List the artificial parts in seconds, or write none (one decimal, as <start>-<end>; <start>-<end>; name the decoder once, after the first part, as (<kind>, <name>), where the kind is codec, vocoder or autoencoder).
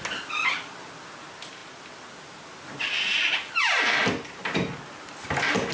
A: none